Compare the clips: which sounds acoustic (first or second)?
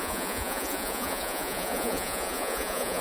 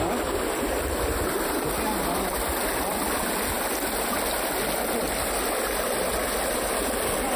second